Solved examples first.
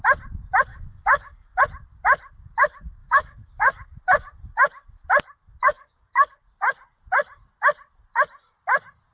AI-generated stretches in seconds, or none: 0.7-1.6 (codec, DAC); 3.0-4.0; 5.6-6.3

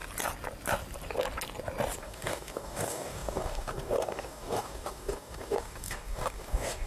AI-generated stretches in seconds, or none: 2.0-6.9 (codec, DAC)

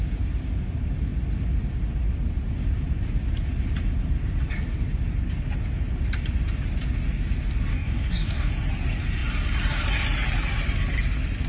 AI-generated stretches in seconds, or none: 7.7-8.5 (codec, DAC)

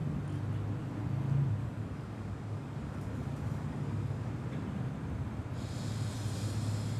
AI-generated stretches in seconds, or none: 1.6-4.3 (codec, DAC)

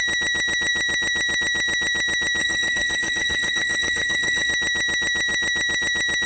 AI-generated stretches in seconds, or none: 2.4-4.5 (codec, DAC)